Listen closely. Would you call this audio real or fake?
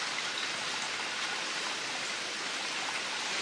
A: real